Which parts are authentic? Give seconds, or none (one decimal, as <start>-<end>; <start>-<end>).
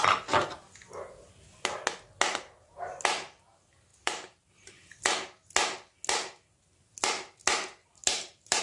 0.0-3.9; 5.0-7.8